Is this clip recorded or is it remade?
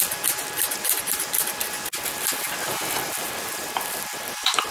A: recorded